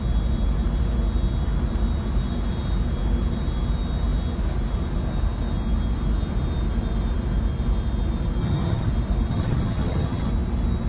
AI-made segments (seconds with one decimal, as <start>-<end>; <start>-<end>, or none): 8.4-8.9; 9.3-10.3